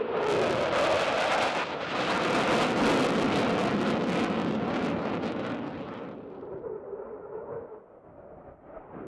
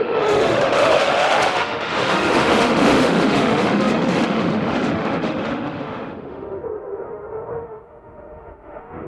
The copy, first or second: second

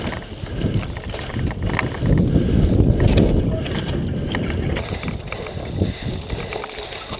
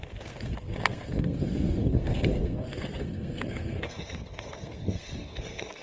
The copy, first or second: second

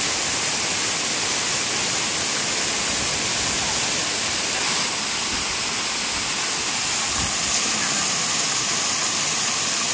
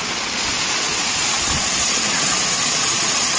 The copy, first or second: second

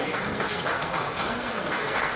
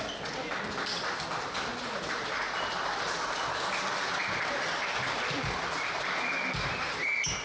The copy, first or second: first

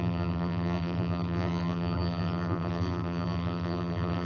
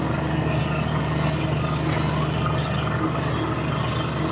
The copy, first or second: first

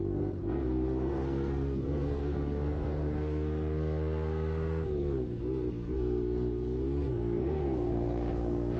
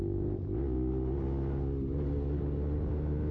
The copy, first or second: first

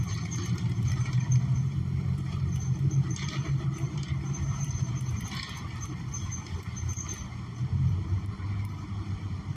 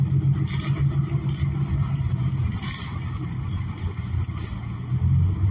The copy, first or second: first